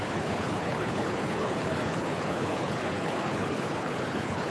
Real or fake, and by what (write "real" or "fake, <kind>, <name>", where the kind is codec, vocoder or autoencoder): fake, codec, HILCodec